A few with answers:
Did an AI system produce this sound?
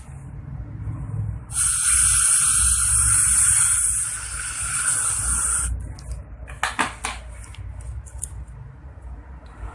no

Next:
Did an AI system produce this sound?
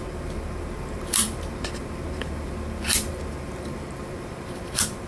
yes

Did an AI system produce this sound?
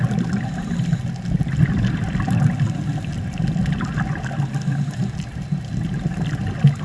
no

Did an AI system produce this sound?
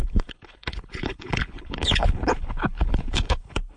yes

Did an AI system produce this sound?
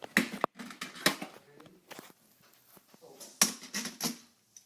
no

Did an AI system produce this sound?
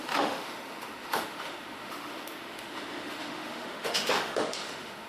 yes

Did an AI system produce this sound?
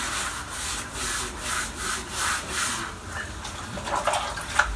no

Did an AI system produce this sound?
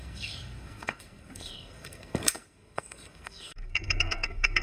yes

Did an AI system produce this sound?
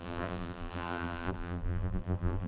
yes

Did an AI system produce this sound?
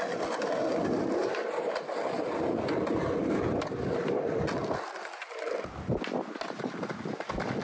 no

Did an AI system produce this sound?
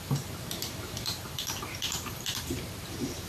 yes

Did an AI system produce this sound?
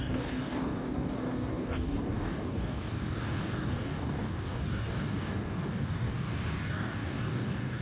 yes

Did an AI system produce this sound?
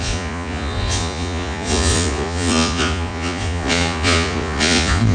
yes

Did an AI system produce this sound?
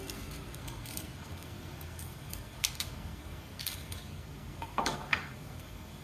yes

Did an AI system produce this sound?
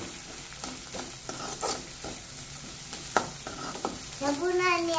no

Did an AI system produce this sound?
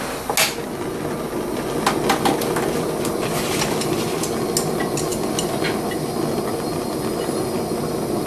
no